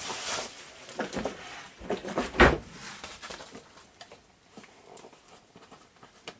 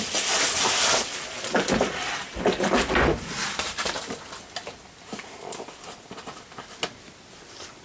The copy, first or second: first